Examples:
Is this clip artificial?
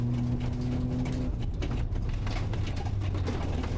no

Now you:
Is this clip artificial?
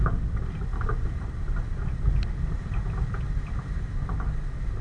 no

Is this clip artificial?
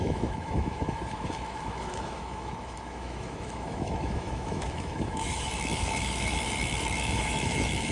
yes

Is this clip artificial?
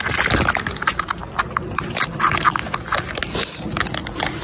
no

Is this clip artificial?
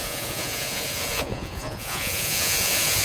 yes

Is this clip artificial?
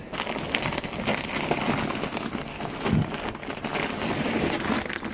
no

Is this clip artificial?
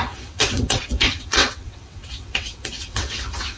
yes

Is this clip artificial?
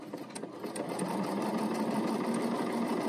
no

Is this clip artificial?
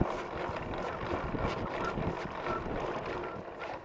no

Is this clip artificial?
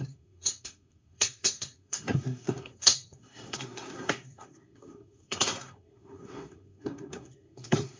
yes